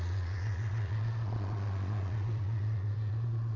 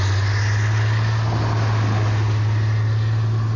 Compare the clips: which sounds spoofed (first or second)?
first